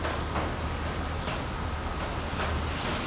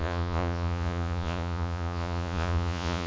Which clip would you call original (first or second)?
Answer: first